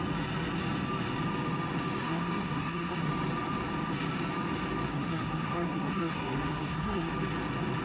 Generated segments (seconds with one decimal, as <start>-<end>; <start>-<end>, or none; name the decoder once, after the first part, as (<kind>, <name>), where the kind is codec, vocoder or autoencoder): 2.0-3.1 (codec, SNAC); 4.9-7.1